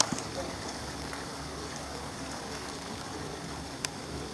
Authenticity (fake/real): fake